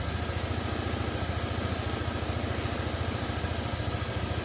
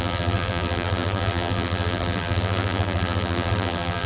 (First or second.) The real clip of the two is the first